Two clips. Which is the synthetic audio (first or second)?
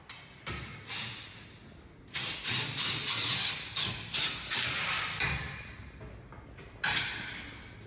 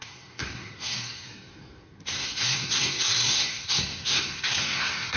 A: second